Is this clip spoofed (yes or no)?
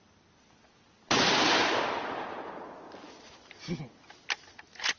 no